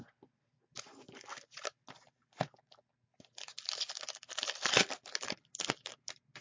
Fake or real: real